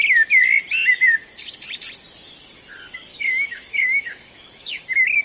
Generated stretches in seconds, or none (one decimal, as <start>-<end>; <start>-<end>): 3.1-5.2